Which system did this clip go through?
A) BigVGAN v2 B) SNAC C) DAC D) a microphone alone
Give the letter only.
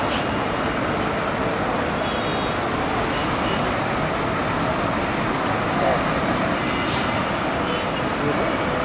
D